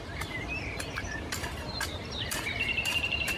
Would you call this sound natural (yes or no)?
no